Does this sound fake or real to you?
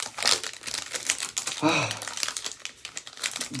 real